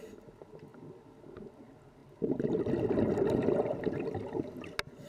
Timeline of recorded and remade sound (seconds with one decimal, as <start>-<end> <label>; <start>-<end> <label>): 0.0-5.1 recorded

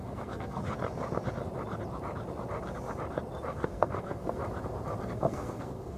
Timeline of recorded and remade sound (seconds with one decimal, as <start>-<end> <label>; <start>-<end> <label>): 0.0-0.7 remade; 0.7-3.5 recorded; 3.5-4.4 remade; 4.4-5.0 recorded; 5.0-6.0 remade

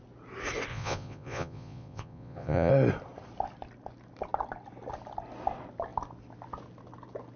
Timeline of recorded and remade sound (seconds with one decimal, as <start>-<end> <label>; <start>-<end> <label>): 0.0-0.7 recorded; 0.7-2.7 remade; 2.7-7.4 recorded

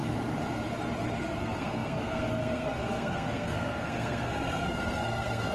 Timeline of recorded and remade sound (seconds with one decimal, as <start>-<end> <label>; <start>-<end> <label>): 0.0-1.4 recorded; 1.4-5.5 remade

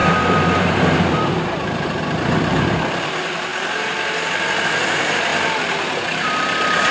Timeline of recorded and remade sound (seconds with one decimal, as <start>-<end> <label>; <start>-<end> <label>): 0.0-3.5 remade; 3.5-4.6 recorded; 4.6-5.3 remade; 5.3-6.1 recorded; 6.1-6.9 remade

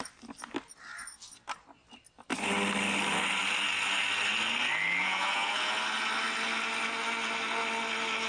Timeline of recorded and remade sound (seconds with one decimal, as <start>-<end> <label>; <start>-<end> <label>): 0.0-5.0 recorded; 5.0-5.7 remade; 5.7-8.3 recorded